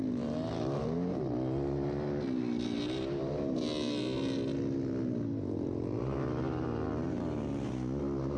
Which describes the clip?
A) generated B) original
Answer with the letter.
B